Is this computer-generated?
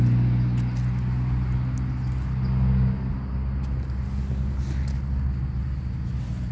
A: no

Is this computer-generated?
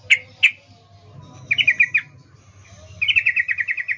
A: no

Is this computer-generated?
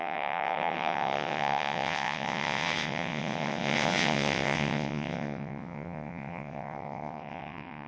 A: yes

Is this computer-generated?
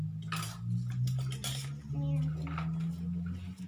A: no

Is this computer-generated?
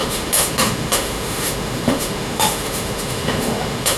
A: yes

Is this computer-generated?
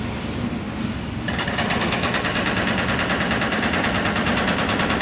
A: no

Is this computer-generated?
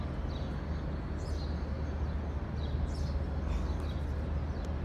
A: no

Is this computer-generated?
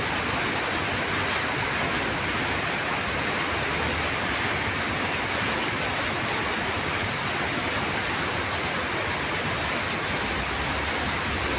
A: no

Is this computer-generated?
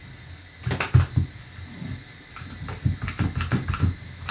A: no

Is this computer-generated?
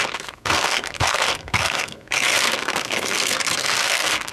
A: yes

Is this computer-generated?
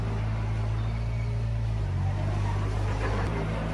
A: no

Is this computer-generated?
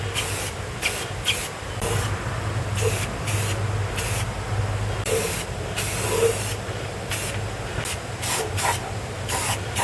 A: no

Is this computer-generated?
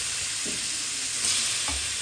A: no